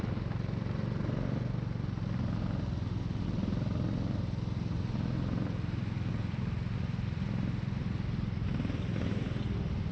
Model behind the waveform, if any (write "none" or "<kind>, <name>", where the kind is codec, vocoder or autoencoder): none